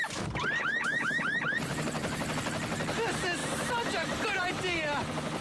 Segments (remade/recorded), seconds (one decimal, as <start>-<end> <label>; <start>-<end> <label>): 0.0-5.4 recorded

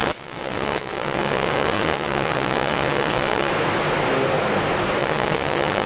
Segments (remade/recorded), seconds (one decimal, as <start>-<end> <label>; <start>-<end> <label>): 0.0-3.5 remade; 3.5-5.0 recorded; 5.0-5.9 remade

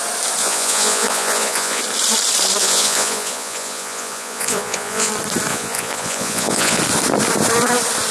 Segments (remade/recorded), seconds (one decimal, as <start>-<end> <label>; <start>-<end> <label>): 0.0-0.4 recorded; 0.4-1.8 remade; 1.8-2.6 recorded; 2.6-5.1 remade; 5.1-5.5 recorded; 5.5-6.8 remade; 6.8-8.1 recorded

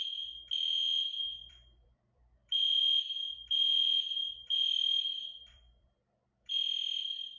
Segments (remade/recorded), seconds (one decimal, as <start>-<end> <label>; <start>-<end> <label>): 0.0-1.3 recorded; 1.3-2.8 remade; 2.8-3.2 recorded; 3.2-7.4 remade

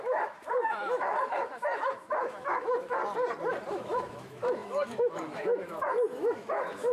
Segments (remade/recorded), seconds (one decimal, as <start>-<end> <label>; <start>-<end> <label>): 0.0-3.0 remade; 3.0-3.7 recorded; 3.7-6.9 remade

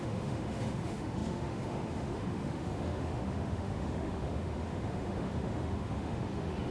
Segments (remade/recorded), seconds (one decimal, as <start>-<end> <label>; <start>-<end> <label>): 0.0-6.7 remade